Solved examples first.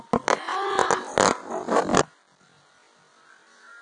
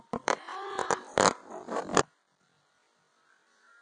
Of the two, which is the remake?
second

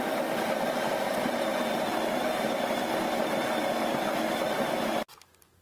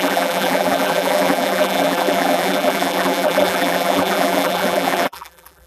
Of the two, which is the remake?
second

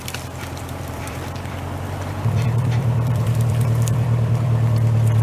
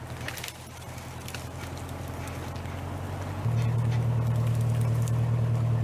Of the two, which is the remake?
first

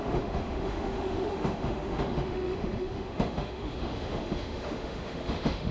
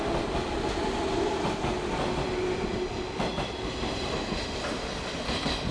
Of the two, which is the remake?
first